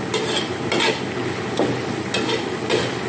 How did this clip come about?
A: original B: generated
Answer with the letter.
A